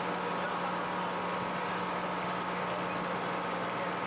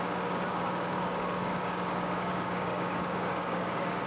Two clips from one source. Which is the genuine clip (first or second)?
first